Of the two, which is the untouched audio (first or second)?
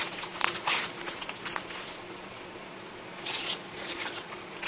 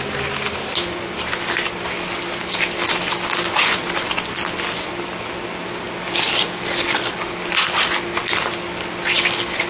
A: second